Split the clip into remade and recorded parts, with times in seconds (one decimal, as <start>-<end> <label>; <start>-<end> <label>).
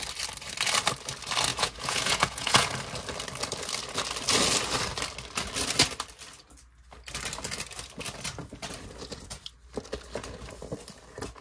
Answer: 0.0-1.5 recorded; 1.5-2.7 remade; 2.7-11.4 recorded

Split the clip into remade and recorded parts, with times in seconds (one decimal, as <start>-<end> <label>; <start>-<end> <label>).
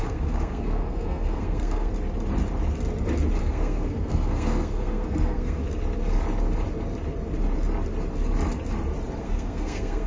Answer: 0.0-1.9 remade; 1.9-3.4 recorded; 3.4-5.6 remade; 5.6-9.2 recorded; 9.2-10.1 remade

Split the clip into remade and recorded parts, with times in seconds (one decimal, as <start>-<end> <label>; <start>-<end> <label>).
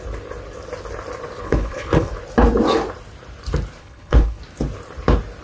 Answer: 0.0-1.4 recorded; 1.4-2.1 remade; 2.1-3.8 recorded; 3.8-4.4 remade; 4.4-5.4 recorded